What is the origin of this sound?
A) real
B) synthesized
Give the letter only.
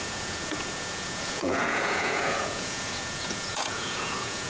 B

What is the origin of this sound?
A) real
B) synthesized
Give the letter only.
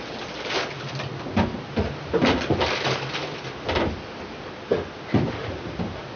A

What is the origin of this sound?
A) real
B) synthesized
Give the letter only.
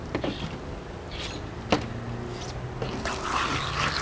A